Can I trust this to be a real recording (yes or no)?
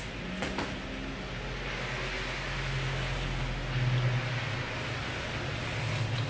yes